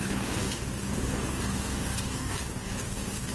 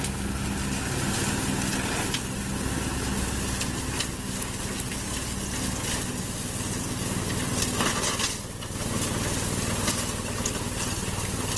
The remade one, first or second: first